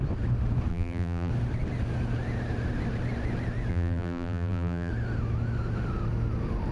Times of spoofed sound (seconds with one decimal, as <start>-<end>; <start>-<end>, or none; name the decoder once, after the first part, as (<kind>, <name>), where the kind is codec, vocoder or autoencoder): 0.7-1.3 (vocoder, BigVGAN v2); 3.7-4.9